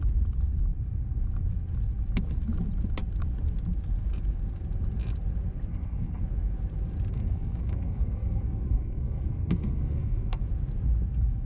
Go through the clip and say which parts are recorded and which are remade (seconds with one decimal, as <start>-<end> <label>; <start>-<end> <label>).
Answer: 0.0-5.7 recorded; 5.7-6.2 remade; 6.2-7.1 recorded; 7.1-10.4 remade; 10.4-11.4 recorded